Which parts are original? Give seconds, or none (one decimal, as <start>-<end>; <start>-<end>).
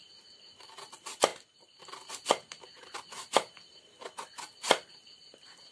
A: 0.0-5.7